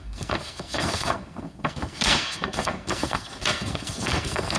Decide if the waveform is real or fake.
fake